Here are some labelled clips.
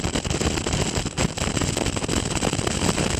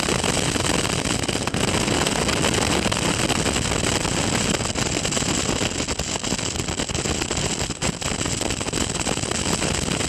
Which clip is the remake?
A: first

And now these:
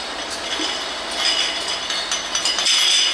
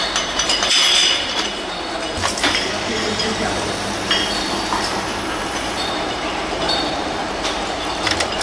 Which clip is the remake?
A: second